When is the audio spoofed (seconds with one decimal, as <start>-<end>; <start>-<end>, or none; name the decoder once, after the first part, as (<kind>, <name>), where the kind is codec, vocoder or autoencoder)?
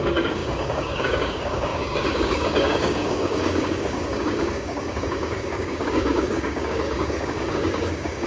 0.0-8.3 (codec, DAC)